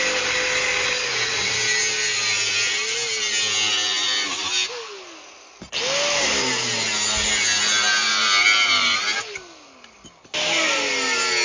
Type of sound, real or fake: real